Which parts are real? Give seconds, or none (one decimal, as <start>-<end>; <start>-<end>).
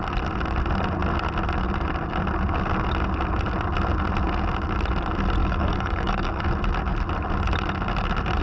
0.0-5.4; 6.5-8.4